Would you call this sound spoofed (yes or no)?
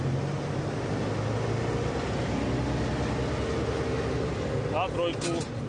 no